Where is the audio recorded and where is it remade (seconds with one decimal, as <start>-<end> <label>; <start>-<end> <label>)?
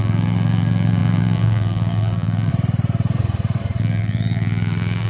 0.0-2.5 remade; 2.5-3.8 recorded; 3.8-5.1 remade